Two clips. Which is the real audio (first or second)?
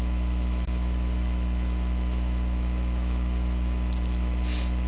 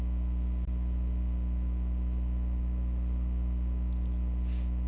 second